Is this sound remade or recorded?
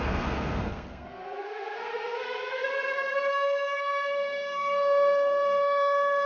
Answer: remade